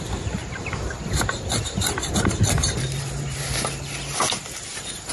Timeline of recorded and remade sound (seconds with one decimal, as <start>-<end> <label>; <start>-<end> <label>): 0.0-5.1 recorded